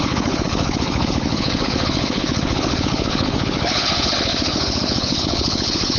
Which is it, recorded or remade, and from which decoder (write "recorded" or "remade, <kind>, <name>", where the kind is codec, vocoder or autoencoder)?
remade, codec, HILCodec